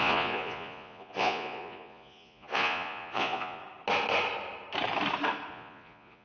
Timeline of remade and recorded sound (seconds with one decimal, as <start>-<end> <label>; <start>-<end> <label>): 0.0-3.6 remade; 3.6-5.5 recorded; 5.5-6.2 remade